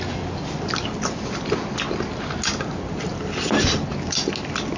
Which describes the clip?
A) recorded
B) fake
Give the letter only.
A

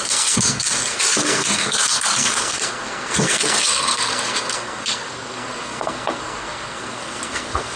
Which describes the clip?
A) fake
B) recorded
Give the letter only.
A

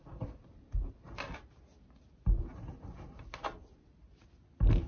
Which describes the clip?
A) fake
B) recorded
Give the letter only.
B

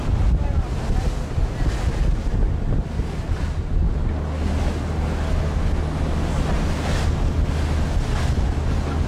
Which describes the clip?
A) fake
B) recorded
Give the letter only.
B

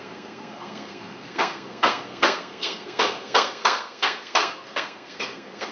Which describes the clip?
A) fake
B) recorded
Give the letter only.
A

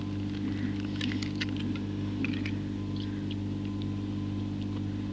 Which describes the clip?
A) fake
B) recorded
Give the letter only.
B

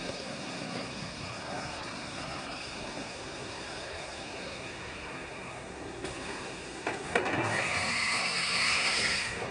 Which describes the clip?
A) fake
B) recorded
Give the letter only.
A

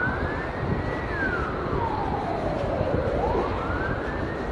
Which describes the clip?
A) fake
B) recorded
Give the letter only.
B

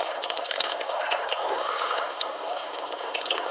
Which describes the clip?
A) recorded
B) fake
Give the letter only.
B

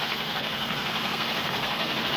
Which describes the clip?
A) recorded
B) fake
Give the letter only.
B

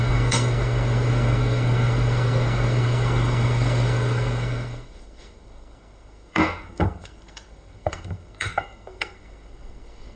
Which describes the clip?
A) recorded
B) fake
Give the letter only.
B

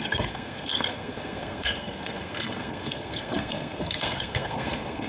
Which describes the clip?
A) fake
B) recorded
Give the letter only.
A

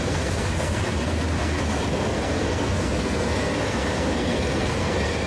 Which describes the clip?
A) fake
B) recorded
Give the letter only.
A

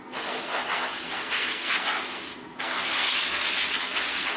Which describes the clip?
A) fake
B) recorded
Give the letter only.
A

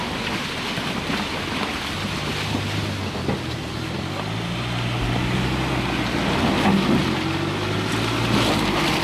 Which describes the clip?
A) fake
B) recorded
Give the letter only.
B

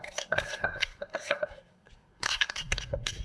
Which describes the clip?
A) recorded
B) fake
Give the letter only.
B